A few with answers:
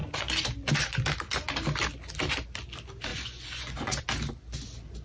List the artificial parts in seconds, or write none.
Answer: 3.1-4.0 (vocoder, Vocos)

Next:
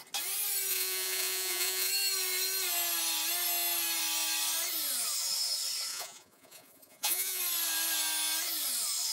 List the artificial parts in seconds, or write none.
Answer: 0.7-1.9 (vocoder, Vocos); 5.9-7.4

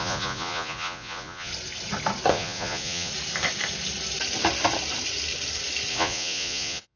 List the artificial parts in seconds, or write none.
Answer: 0.0-1.5 (vocoder, Vocos); 2.3-3.1; 5.9-7.0